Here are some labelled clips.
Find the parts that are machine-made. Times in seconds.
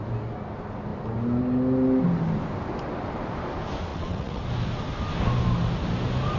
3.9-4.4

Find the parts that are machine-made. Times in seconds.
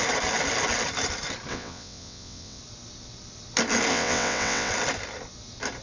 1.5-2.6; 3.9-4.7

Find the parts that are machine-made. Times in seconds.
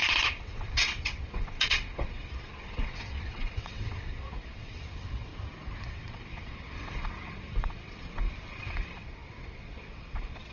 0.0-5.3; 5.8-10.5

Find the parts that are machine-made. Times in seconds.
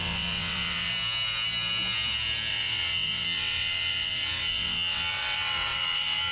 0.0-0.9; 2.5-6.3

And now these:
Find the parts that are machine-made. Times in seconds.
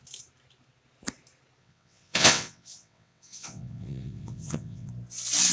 1.6-4.9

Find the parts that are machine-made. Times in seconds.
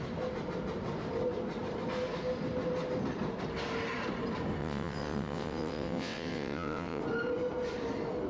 4.6-7.0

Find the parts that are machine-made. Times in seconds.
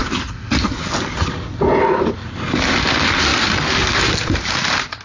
none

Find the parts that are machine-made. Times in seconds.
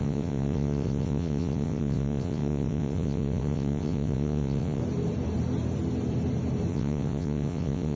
0.0-4.8; 6.7-8.0